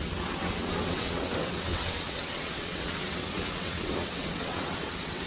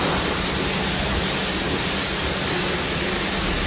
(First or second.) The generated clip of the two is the first